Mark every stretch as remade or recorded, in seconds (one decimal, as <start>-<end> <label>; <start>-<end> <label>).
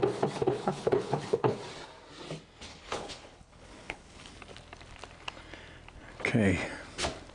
0.0-0.4 recorded; 0.4-1.6 remade; 1.6-2.7 recorded; 2.7-4.3 remade; 4.3-7.3 recorded